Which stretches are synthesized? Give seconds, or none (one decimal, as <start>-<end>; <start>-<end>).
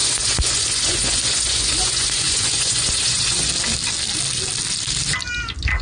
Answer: 0.0-3.5